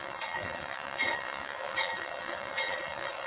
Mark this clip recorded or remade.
remade